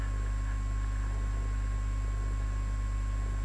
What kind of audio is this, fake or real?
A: real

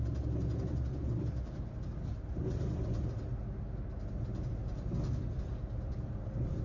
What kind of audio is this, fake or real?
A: real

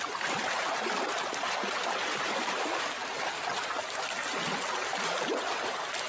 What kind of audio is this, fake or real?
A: real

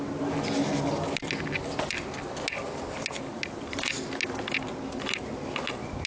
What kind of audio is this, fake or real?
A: real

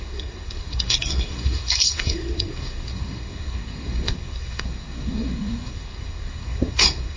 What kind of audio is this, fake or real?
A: fake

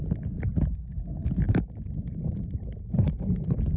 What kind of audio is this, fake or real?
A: real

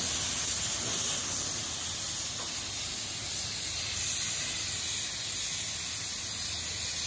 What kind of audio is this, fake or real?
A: real